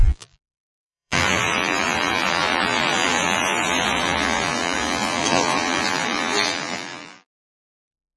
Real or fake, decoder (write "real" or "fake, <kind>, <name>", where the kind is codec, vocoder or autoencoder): fake, vocoder, BigVGAN v2